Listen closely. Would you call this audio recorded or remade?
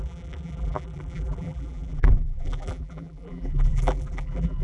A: remade